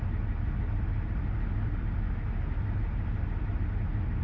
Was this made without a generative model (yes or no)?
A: yes